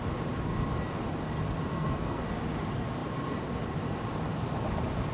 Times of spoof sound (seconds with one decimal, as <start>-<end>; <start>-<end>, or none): 1.7-2.2